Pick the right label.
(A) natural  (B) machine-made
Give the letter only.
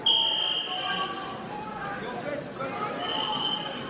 A